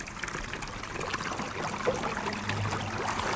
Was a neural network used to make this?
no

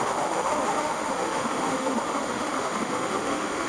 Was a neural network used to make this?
yes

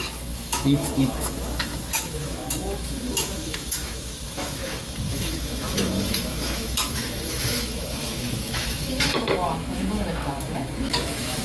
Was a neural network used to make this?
yes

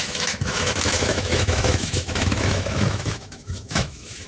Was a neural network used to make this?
yes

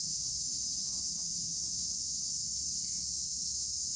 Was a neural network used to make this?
yes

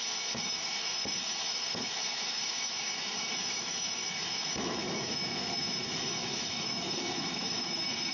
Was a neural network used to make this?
yes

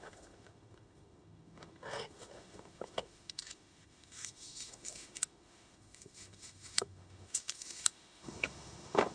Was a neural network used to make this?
yes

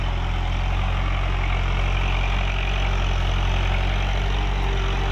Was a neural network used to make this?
no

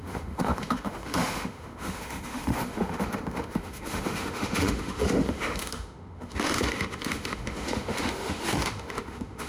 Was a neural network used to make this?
yes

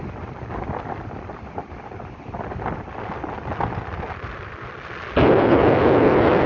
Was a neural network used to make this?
no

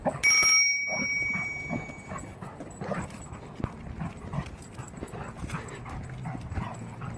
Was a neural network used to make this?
no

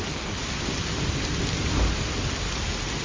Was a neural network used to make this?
no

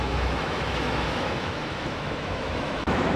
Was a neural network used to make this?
yes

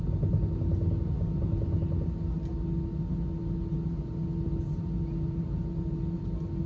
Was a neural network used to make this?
no